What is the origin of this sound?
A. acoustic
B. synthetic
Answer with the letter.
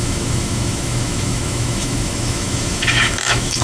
B